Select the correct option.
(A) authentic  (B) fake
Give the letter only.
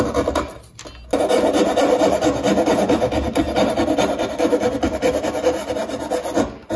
A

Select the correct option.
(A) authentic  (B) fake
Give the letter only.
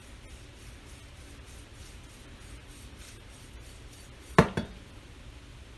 A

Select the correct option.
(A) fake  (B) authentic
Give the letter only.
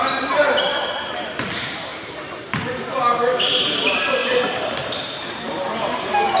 A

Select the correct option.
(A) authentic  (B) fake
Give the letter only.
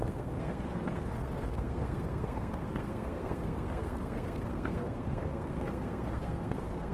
B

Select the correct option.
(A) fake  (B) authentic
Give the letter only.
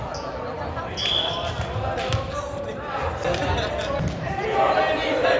B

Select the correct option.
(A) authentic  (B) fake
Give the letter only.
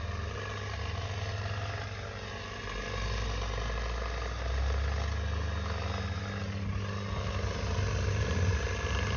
A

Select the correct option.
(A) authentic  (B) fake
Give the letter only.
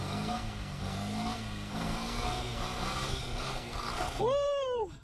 B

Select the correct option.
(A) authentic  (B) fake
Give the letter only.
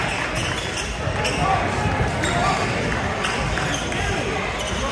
A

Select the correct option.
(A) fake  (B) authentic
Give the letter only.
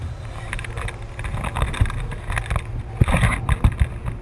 B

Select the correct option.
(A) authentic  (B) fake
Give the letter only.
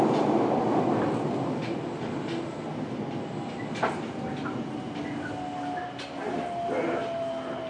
A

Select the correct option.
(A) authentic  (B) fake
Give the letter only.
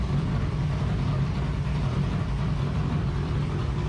B